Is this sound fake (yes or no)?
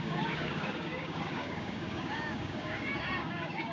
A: yes